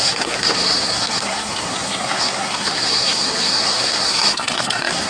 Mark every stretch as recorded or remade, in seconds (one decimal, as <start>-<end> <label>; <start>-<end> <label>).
0.0-5.1 remade